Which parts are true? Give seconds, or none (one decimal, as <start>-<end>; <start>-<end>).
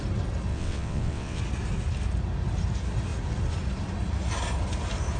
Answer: 0.0-0.5; 1.4-5.2